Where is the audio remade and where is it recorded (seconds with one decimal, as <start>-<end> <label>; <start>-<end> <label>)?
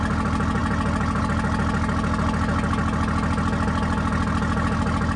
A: 0.0-5.2 recorded